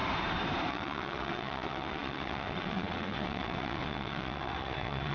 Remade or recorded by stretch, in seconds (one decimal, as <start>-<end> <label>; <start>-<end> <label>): 0.0-0.7 recorded; 0.7-5.1 remade